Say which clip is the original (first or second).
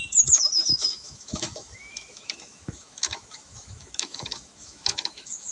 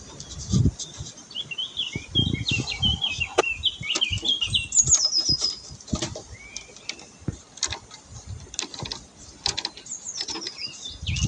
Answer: second